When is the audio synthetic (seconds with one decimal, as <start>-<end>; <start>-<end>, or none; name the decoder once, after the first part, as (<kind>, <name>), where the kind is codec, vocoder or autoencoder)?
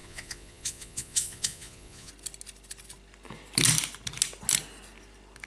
0.0-2.1 (vocoder, Vocos)